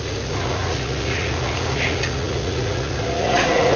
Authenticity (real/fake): fake